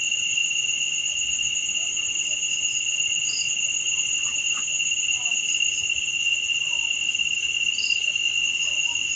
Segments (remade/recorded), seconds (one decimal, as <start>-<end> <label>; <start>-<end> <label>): 0.0-9.2 recorded